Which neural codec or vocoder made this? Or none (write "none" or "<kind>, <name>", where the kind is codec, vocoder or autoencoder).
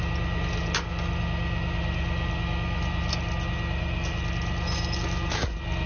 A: none